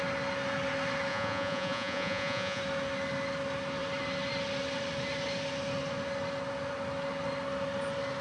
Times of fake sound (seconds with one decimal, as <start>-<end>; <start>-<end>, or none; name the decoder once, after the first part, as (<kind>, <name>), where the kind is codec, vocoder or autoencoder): 1.1-2.6 (vocoder, Vocos)